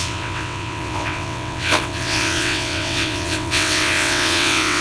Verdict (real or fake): fake